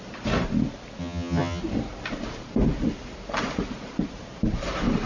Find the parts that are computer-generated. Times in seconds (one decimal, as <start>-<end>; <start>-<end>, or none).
1.0-1.6